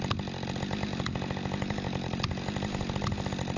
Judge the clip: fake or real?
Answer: real